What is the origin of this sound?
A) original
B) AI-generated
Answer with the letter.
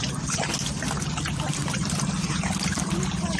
A